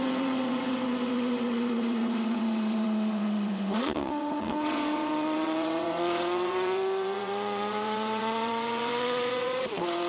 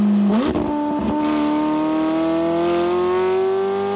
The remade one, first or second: first